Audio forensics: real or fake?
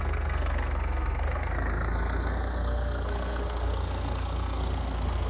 fake